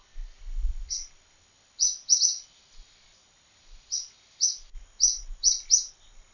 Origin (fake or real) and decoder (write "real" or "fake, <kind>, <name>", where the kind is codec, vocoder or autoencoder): real